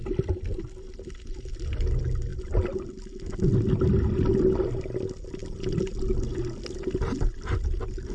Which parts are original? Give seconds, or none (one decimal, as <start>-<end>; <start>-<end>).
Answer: 0.0-8.1